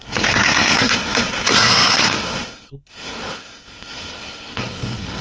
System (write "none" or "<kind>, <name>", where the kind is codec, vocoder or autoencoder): codec, SNAC